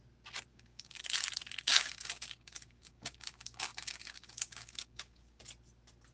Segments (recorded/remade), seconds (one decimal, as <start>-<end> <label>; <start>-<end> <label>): 0.0-0.5 recorded; 0.5-1.0 remade; 1.0-1.7 recorded; 1.7-5.4 remade; 5.4-6.1 recorded